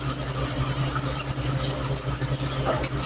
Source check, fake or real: real